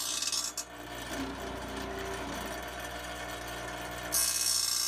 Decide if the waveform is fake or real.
real